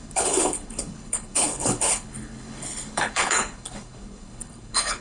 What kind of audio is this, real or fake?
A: fake